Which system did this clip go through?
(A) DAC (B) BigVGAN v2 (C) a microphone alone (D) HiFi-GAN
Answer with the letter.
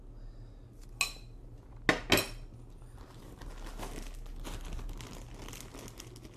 C